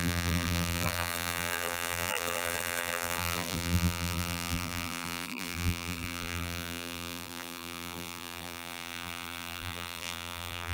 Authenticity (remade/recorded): remade